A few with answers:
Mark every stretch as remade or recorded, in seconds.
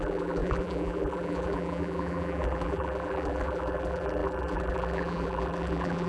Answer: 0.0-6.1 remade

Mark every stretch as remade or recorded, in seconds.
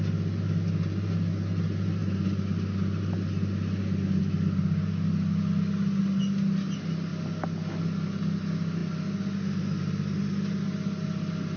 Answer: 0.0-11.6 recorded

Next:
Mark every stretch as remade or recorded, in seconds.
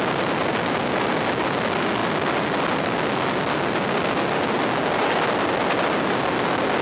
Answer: 0.0-6.8 recorded